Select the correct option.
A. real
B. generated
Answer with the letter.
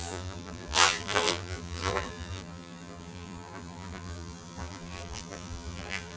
B